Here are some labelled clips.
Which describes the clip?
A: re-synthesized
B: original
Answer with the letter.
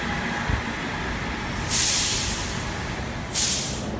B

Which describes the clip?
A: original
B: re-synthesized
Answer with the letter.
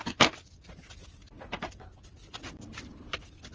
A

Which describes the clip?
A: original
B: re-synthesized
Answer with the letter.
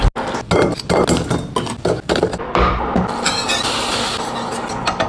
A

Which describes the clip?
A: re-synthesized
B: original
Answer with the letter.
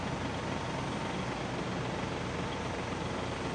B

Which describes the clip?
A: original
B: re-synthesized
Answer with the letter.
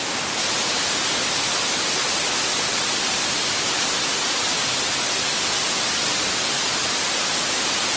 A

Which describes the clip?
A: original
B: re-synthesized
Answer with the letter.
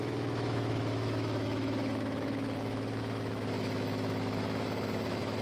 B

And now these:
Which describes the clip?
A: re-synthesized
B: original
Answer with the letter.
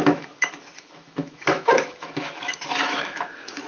A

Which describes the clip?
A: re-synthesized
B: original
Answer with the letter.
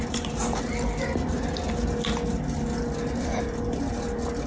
B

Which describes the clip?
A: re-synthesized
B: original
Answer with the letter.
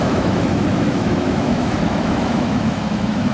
A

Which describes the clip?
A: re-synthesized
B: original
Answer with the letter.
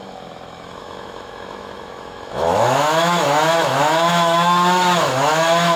A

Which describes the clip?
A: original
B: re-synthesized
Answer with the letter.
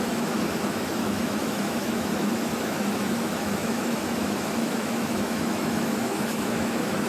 B